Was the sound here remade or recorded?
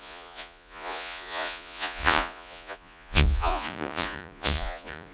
remade